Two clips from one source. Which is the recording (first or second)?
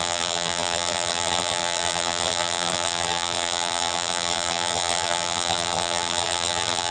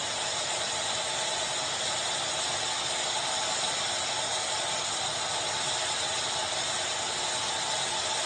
second